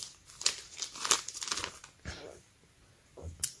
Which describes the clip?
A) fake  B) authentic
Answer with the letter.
B